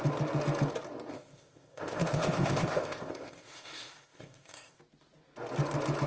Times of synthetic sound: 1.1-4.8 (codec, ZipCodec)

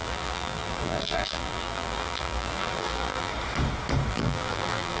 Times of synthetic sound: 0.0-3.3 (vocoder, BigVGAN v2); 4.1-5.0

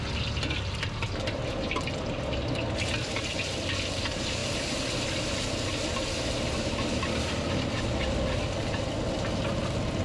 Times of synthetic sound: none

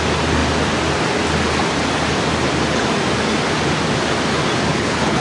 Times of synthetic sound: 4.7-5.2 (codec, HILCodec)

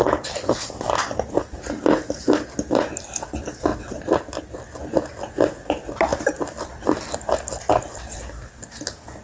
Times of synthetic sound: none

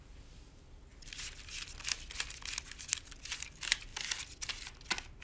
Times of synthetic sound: 0.0-0.9 (vocoder, BigVGAN v2); 3.3-3.9

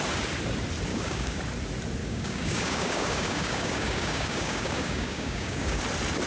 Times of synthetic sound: 0.9-1.4 (codec, DAC); 2.0-5.8